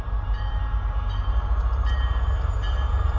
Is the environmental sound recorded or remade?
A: remade